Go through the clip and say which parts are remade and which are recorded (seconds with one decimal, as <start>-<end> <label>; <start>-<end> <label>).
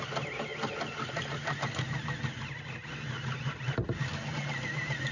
0.0-5.1 recorded